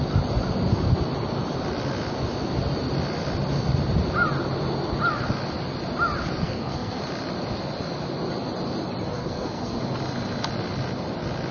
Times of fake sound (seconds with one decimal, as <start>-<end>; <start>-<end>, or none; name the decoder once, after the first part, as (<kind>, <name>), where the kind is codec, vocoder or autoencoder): 6.4-7.0 (codec, SNAC); 9.2-9.8